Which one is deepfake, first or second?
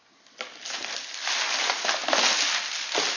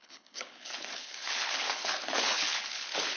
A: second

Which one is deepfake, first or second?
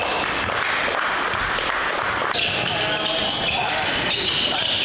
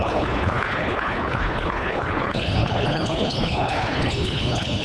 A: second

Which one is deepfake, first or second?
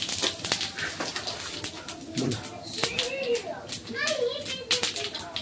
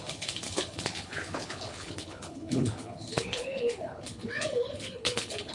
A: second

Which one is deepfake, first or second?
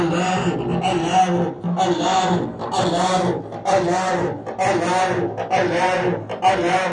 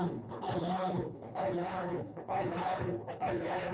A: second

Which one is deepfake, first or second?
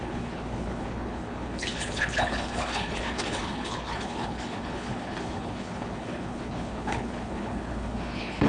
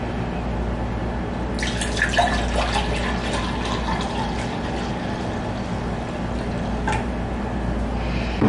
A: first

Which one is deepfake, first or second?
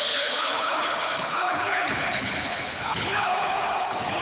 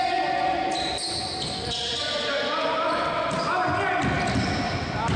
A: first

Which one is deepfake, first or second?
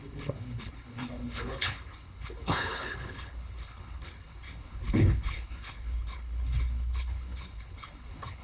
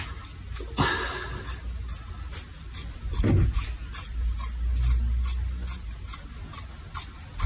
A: first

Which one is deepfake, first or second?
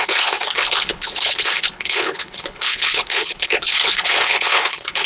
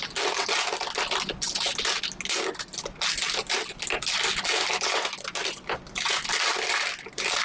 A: first